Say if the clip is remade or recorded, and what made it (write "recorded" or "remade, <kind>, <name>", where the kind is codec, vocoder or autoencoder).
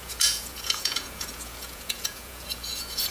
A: remade, vocoder, Vocos